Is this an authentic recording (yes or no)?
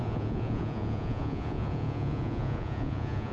no